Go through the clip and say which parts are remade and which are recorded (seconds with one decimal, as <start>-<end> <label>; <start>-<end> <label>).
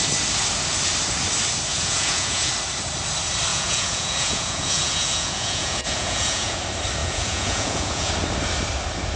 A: 0.0-1.7 recorded; 1.7-2.5 remade; 2.5-3.5 recorded; 3.5-6.6 remade; 6.6-7.0 recorded; 7.0-8.1 remade; 8.1-9.2 recorded